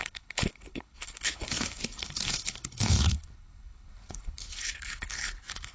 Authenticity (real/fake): fake